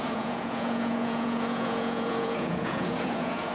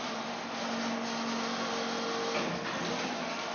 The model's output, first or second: first